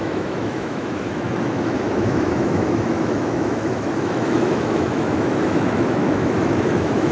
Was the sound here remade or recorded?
remade